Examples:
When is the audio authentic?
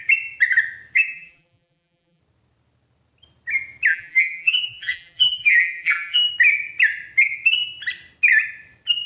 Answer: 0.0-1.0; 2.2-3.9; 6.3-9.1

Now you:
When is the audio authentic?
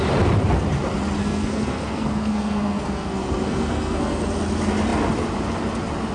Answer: 0.0-1.2; 4.2-6.1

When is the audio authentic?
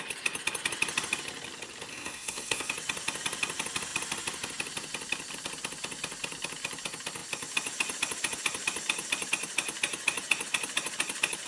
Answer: 0.0-1.9; 2.7-11.5